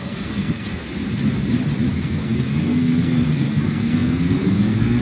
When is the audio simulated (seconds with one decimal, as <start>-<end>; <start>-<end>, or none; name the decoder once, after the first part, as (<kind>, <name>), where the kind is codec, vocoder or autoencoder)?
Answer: 0.0-0.8 (codec, SNAC); 1.9-5.0